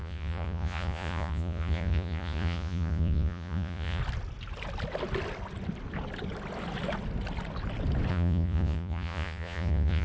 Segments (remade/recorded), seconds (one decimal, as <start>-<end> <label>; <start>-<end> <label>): 0.0-4.0 remade; 4.0-8.1 recorded; 8.1-10.0 remade